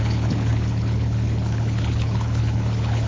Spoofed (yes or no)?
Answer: yes